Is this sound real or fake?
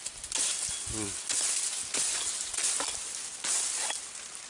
real